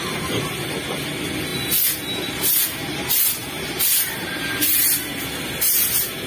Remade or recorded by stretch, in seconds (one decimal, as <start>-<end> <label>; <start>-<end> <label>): 0.0-6.3 recorded